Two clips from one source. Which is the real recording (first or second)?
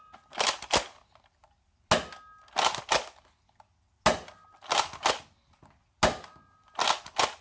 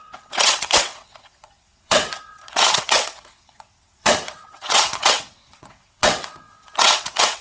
first